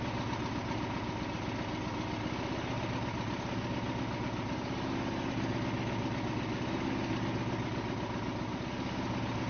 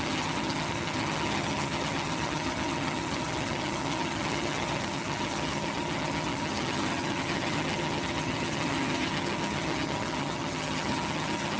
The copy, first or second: second